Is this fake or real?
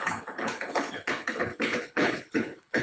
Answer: fake